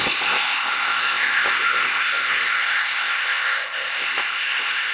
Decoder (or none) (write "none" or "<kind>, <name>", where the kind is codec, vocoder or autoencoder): codec, ZipCodec